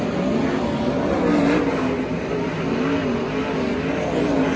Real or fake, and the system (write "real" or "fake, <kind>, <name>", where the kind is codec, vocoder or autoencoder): real